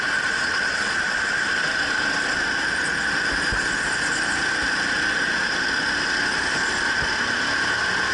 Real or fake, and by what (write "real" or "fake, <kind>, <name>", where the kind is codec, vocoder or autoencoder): real